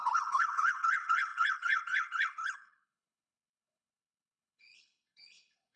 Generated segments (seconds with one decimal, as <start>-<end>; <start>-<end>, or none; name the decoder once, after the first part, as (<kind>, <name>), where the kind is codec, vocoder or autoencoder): 0.0-5.8 (codec, HILCodec)